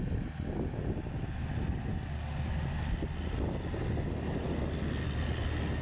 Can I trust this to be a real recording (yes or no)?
yes